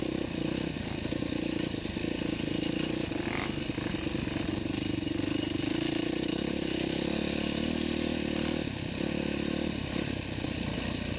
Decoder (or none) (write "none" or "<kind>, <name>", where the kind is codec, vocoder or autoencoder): none